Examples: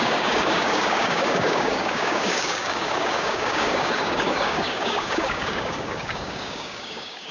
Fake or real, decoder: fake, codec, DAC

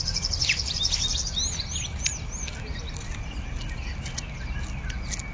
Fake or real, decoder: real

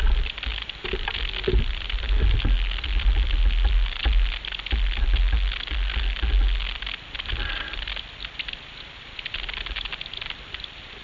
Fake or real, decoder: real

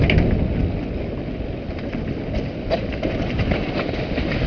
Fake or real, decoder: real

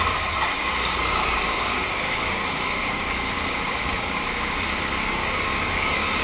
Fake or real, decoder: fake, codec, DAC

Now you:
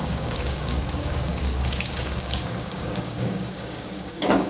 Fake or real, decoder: fake, codec, DAC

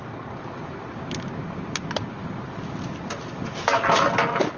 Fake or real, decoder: real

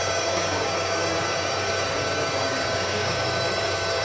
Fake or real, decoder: fake, codec, DAC